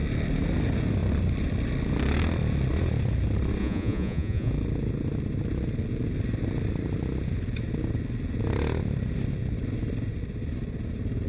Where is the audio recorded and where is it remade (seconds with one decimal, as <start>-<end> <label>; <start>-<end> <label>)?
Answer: 0.0-3.6 recorded; 3.6-4.5 remade; 4.5-11.3 recorded